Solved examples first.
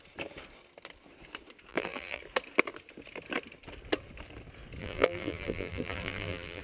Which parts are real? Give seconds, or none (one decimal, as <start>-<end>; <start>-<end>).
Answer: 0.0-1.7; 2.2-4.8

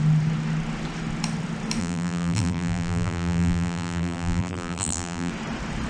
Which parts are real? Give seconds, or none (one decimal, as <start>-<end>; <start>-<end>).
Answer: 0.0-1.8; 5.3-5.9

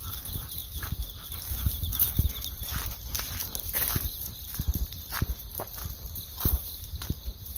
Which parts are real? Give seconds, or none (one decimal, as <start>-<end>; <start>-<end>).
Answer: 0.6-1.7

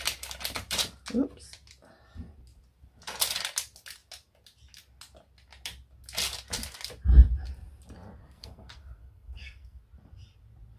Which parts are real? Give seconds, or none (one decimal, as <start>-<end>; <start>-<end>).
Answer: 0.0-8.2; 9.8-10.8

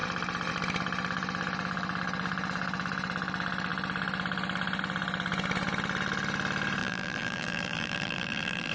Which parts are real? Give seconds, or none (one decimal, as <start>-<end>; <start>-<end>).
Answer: 0.0-6.8